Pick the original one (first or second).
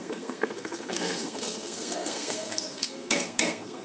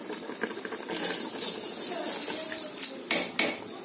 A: second